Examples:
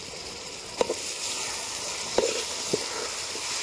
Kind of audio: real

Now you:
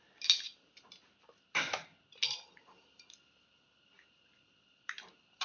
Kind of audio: real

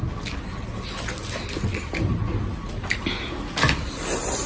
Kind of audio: real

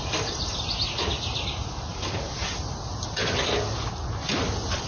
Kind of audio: real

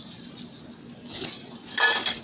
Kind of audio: real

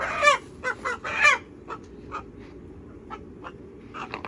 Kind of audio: real